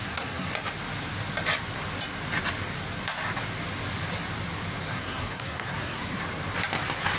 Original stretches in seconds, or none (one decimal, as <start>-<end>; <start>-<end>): 0.5-4.9; 6.2-7.2

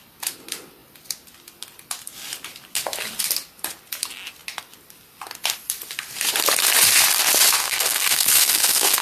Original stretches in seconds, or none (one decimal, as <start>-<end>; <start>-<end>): 0.0-7.6

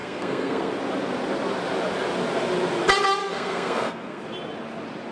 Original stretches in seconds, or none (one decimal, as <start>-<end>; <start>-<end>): 0.7-3.2; 4.2-5.1

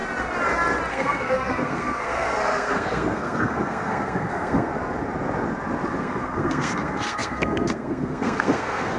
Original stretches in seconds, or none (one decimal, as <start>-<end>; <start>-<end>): 0.0-0.9; 4.7-6.0

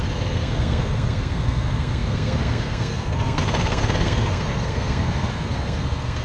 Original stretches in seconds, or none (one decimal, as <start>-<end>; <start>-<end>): none

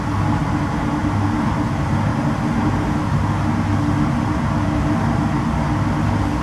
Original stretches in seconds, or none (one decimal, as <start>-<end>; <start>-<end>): 0.0-6.4